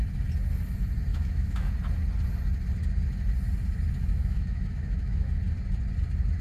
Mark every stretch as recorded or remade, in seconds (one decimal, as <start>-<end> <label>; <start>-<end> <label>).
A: 0.0-1.1 recorded; 1.1-1.7 remade; 1.7-4.0 recorded; 4.0-5.4 remade; 5.4-6.4 recorded